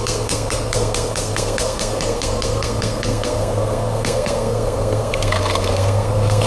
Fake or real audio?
fake